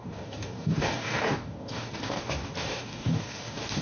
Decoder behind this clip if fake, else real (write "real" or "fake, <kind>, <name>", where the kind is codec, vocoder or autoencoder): fake, codec, DAC